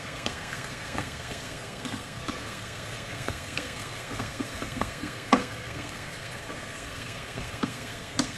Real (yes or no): no